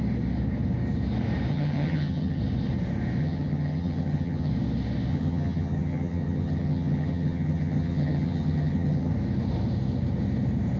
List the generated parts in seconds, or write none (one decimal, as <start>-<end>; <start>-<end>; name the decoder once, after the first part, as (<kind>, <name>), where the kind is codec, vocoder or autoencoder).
1.5-2.4 (vocoder, HiFi-GAN); 3.2-4.5; 5.1-9.1